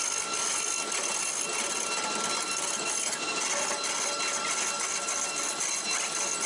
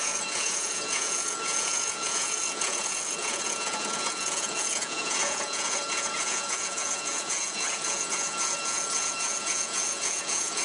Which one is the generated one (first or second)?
second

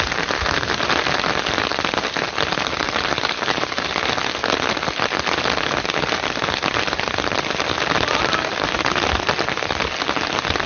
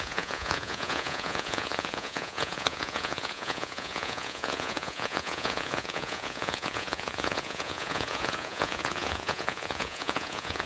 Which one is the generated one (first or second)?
second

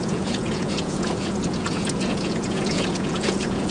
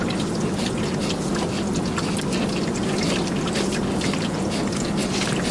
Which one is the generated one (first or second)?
first